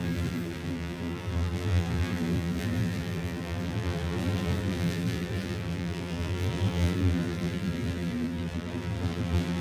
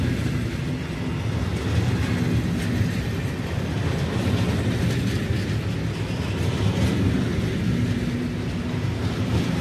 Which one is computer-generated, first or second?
first